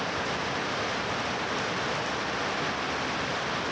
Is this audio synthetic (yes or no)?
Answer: no